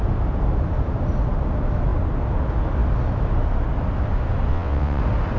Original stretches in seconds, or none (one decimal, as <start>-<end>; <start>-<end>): 0.0-4.5; 5.0-5.4